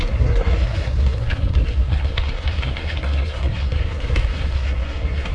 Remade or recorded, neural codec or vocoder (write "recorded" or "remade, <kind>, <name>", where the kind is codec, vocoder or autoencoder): remade, codec, SNAC